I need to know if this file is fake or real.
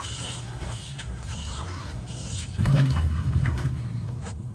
fake